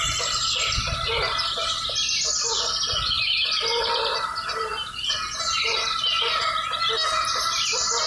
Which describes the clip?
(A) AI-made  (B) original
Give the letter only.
B